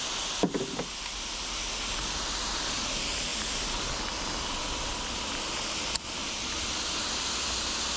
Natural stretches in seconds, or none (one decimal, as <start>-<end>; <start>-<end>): 0.0-8.0